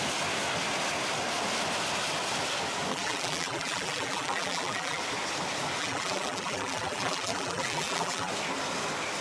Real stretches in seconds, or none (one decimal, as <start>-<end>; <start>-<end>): 0.0-2.9; 5.0-5.8; 8.3-9.2